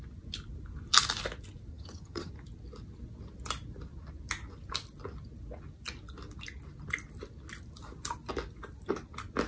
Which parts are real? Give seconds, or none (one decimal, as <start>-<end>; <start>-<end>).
0.0-1.7; 2.3-9.5